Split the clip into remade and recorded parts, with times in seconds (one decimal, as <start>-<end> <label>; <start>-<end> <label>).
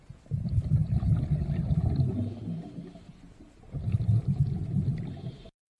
0.0-5.8 recorded